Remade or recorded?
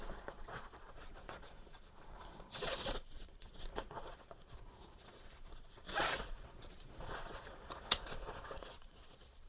remade